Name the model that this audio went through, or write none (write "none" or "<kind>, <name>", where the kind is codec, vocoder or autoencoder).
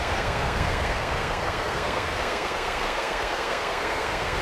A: codec, SNAC